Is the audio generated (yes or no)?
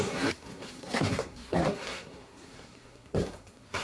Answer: yes